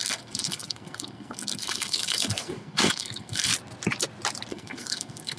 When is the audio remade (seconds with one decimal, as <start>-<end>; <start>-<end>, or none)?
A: 0.0-3.5; 4.5-5.4